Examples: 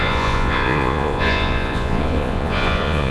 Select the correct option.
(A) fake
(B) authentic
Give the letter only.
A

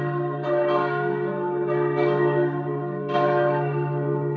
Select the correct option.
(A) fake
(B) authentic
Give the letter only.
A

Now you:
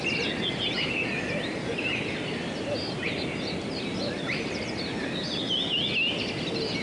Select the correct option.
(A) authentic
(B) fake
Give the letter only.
A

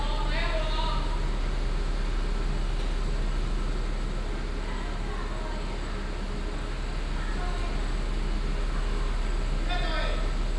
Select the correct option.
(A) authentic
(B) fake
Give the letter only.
A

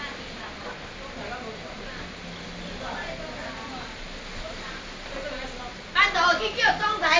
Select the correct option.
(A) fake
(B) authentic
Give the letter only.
B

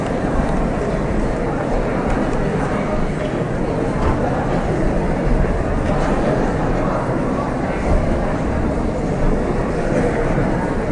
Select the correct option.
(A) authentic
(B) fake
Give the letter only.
A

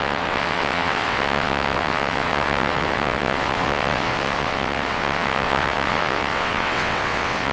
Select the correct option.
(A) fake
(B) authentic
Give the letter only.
A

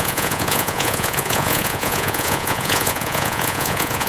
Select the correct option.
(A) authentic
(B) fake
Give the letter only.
B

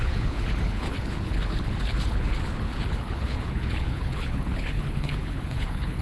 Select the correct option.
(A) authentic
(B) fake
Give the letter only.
B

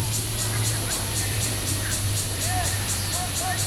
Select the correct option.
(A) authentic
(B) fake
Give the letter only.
B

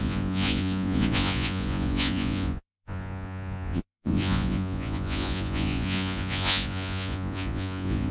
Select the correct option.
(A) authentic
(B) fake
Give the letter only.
B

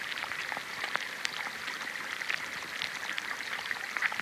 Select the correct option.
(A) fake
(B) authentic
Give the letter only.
B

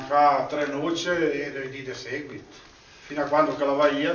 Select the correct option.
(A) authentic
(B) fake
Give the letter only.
A